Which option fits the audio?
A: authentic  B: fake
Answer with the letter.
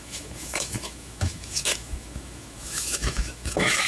B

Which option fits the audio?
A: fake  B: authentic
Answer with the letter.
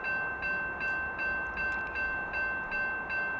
B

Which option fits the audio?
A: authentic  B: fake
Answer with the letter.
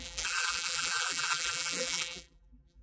B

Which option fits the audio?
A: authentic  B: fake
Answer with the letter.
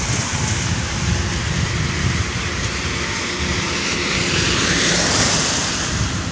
B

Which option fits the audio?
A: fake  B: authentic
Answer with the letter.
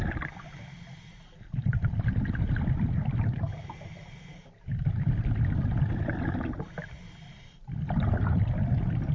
B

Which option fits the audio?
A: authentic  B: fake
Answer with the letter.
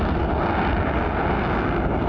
A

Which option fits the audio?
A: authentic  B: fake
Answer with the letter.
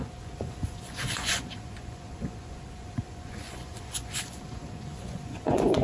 B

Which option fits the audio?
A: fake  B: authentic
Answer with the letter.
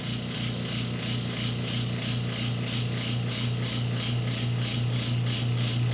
B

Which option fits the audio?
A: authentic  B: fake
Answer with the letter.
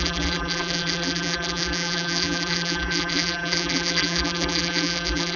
B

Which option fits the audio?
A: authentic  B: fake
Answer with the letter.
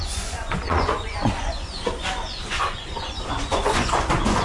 B